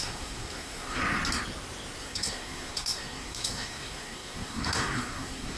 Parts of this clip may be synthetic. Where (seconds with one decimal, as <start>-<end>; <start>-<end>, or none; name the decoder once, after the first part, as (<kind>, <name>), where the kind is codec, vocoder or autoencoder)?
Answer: 0.0-1.0 (codec, SNAC); 2.0-5.6